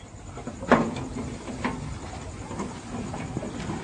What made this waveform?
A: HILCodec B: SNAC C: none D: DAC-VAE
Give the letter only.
C